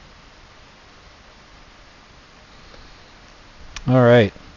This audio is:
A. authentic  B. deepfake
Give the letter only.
A